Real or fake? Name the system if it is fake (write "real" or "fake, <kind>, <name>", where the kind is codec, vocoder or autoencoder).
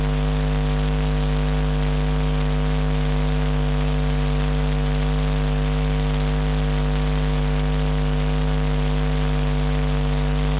real